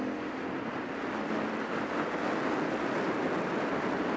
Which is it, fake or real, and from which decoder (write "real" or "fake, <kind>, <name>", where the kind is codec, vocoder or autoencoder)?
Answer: real